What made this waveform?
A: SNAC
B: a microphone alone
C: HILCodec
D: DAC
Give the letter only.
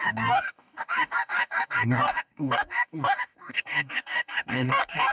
D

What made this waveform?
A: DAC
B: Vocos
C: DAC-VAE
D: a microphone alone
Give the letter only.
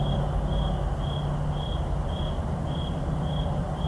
D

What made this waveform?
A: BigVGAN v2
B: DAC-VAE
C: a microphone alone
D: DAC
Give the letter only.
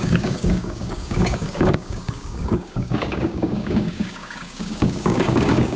D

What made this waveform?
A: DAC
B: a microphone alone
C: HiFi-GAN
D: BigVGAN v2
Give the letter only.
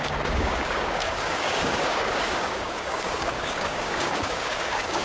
A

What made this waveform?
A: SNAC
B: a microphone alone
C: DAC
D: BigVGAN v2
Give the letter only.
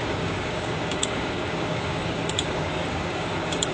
C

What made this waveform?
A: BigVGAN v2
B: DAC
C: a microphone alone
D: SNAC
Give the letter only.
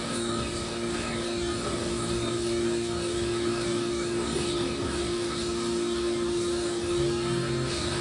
B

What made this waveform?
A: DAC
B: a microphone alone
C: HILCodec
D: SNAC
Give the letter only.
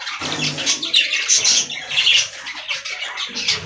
B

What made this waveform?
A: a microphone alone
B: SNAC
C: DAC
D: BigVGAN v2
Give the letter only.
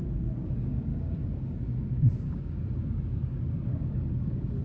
C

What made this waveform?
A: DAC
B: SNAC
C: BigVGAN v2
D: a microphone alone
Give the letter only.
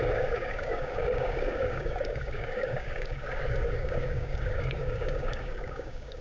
A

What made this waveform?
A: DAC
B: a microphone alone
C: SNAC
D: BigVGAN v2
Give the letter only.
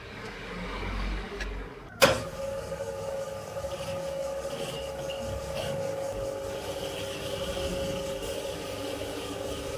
A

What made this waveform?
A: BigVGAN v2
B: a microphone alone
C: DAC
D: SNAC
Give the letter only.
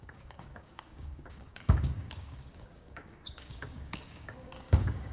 C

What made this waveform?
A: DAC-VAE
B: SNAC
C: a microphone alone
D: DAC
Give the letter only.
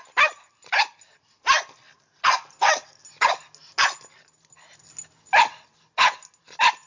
C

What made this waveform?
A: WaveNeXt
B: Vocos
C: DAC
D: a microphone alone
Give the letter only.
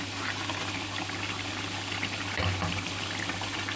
D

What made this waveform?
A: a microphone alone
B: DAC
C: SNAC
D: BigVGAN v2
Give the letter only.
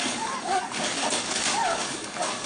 B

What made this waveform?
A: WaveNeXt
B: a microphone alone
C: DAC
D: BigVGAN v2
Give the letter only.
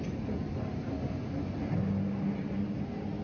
B